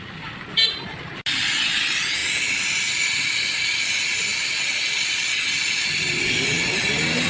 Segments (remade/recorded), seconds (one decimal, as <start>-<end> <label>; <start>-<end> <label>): 0.0-7.3 recorded